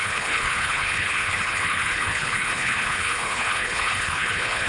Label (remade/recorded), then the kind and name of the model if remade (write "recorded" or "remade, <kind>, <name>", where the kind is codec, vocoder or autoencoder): remade, codec, HILCodec